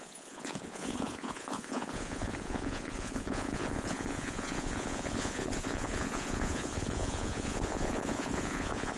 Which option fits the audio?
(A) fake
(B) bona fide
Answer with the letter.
A